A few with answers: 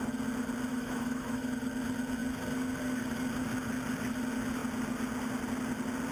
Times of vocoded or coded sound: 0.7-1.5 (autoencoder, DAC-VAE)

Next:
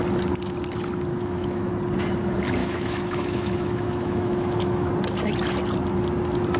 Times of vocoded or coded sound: 1.1-1.7 (autoencoder, DAC-VAE); 2.6-4.9

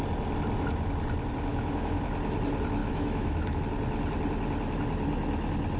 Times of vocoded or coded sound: 1.5-2.0 (autoencoder, DAC-VAE); 2.8-3.6

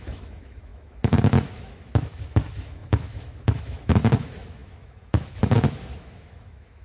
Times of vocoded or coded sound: 0.0-6.8 (autoencoder, DAC-VAE)

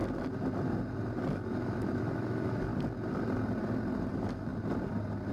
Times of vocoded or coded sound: 1.3-2.7 (autoencoder, DAC-VAE); 4.1-4.5